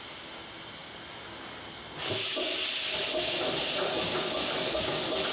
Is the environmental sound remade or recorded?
recorded